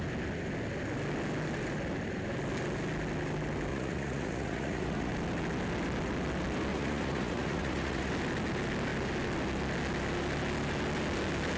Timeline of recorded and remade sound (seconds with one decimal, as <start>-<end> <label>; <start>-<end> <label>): 0.0-3.7 recorded; 3.7-5.1 remade; 5.1-6.7 recorded; 6.7-8.1 remade; 8.1-11.6 recorded